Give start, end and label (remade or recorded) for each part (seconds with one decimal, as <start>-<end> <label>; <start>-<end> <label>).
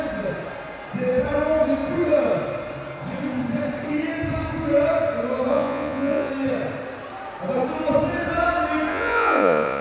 0.0-5.5 recorded; 5.5-6.3 remade; 6.3-8.9 recorded; 8.9-9.8 remade